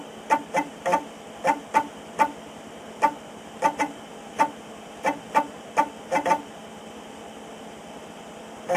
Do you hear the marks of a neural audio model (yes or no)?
no